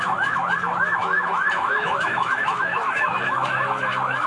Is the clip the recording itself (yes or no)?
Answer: no